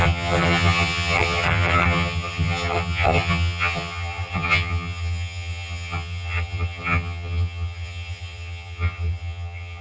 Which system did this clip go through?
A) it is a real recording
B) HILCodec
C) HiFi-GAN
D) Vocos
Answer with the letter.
C